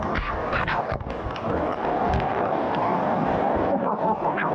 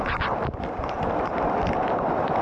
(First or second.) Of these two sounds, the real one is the second